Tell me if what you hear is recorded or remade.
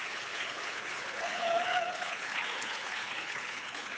remade